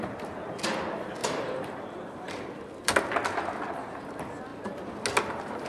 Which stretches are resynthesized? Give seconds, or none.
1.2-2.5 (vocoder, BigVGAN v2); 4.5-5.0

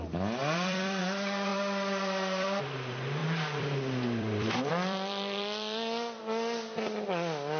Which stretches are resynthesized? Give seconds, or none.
0.4-1.0 (vocoder, BigVGAN v2); 1.5-2.6; 3.2-6.2

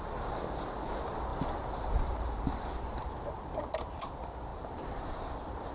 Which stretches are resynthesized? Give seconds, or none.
1.3-3.4 (vocoder, BigVGAN v2); 4.5-5.2

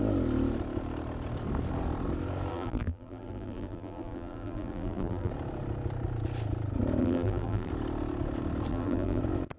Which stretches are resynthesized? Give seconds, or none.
2.5-5.3 (vocoder, BigVGAN v2); 7.0-7.7; 8.7-9.2